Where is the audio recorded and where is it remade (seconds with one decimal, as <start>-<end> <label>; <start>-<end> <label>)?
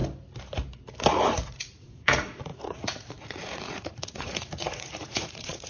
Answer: 0.0-1.1 recorded; 1.1-5.7 remade